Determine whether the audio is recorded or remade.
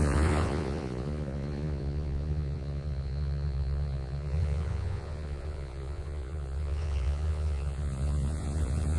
remade